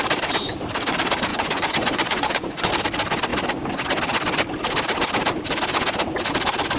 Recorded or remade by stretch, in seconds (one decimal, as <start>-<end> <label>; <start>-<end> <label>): 0.0-1.3 recorded; 1.3-2.7 remade; 2.7-6.8 recorded